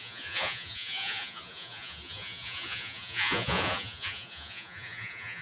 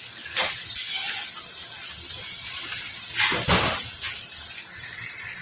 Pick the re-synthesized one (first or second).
first